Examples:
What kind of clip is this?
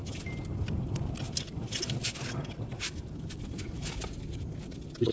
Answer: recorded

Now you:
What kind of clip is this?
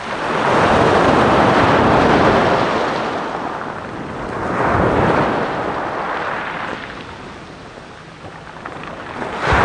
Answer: recorded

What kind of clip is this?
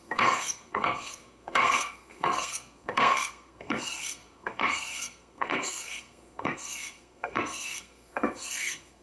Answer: remade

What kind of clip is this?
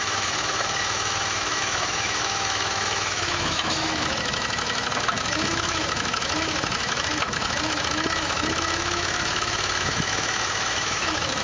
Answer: remade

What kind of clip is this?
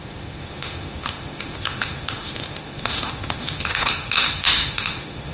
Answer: remade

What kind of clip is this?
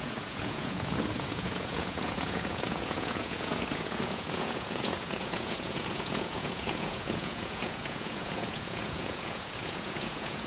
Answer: remade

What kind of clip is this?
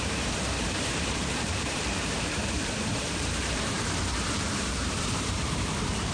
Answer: remade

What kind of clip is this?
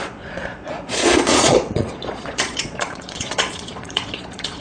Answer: remade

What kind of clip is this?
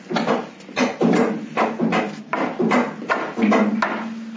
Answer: recorded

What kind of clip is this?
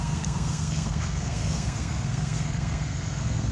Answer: remade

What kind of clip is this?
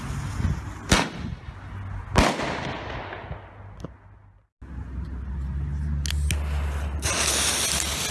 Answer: recorded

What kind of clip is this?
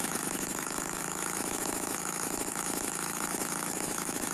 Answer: remade